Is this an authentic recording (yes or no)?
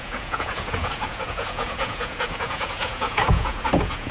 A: no